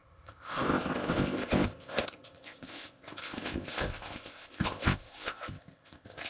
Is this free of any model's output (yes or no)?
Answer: no